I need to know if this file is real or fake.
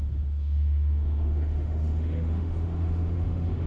fake